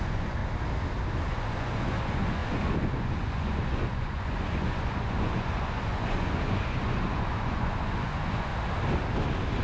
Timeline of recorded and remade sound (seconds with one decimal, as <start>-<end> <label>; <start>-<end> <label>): 0.0-0.4 remade; 0.4-1.2 recorded; 1.2-8.5 remade; 8.5-9.6 recorded